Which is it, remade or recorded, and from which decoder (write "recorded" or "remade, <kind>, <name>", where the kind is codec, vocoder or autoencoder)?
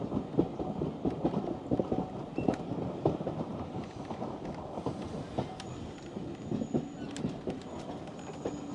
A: recorded